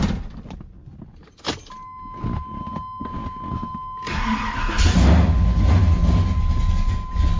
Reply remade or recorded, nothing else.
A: recorded